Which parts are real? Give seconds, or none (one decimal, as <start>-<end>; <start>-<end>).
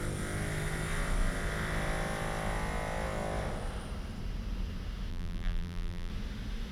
0.0-5.1; 6.1-6.7